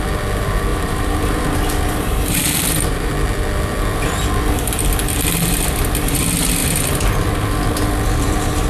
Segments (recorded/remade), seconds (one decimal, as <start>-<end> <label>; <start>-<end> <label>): 0.0-0.7 recorded; 0.7-3.1 remade; 3.1-8.7 recorded